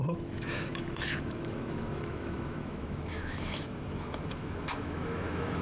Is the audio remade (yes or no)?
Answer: yes